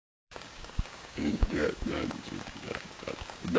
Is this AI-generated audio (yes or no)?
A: yes